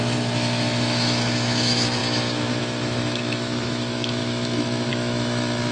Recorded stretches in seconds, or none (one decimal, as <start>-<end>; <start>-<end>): none

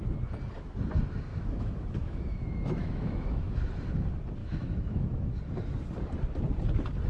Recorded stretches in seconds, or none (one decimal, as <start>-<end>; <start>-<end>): 0.0-1.3; 3.6-4.4; 5.4-7.1